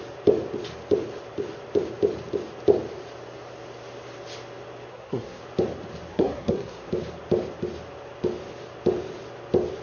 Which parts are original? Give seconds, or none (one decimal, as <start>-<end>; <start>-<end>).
0.0-4.9; 5.4-6.1; 6.9-9.8